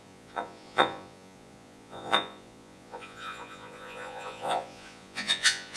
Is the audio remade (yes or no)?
yes